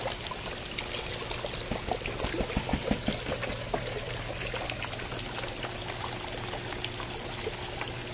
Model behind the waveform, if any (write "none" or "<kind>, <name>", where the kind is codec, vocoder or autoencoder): none